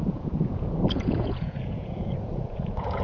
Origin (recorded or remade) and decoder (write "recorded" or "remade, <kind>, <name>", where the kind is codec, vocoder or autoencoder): remade, vocoder, Vocos